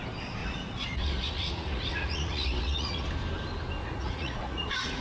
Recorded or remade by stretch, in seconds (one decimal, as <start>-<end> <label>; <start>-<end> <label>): 0.0-0.4 recorded; 0.4-3.1 remade; 3.1-3.8 recorded; 3.8-5.0 remade